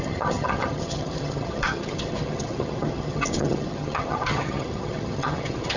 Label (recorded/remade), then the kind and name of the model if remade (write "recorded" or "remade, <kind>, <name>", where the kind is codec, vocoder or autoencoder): remade, vocoder, HiFi-GAN